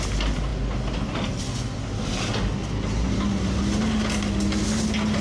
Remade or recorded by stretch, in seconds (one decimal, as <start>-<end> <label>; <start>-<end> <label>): 0.0-5.2 recorded